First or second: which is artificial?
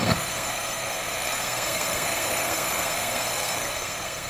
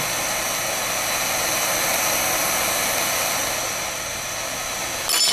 first